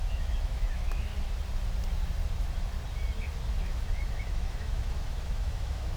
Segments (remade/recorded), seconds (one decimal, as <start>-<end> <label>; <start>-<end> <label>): 0.0-1.1 remade; 1.1-3.6 recorded; 3.6-6.0 remade